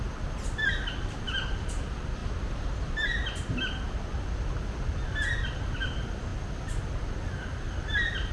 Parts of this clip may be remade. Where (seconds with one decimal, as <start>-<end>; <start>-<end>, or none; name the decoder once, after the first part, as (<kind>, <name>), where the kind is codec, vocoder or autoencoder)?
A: none